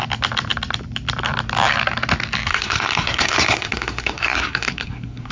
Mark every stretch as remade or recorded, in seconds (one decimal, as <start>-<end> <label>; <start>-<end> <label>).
0.0-2.5 recorded; 2.5-5.3 remade